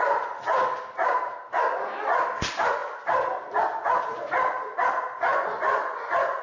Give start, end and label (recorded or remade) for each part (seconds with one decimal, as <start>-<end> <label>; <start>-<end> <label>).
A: 0.0-5.3 recorded; 5.3-6.4 remade